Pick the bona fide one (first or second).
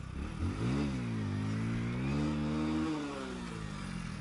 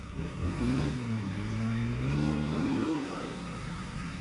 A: first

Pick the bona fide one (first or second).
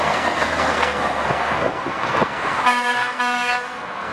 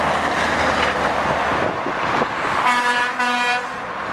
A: second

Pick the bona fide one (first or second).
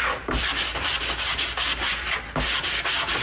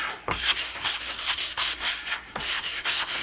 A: first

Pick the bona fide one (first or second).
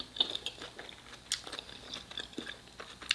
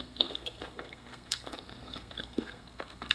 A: first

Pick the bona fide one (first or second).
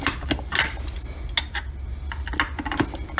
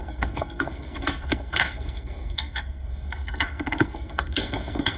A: first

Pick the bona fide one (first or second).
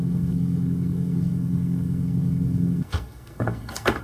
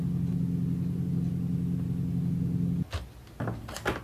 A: second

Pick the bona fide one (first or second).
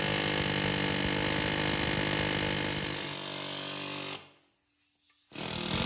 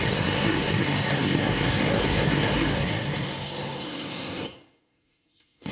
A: first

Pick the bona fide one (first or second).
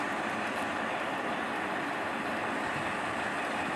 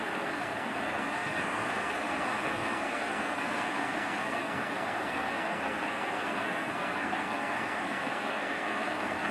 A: first